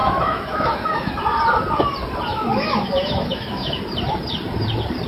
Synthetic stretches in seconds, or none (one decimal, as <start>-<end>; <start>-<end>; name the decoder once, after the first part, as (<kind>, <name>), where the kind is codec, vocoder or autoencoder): 0.0-1.1 (autoencoder, DAC-VAE); 2.3-3.8